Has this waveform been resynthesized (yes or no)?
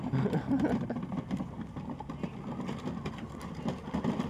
no